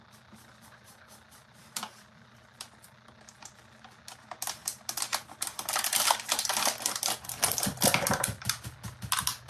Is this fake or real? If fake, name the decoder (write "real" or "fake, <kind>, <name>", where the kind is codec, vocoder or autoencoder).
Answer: real